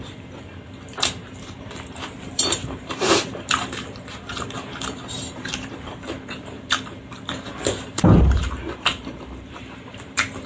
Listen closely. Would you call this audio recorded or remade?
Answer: remade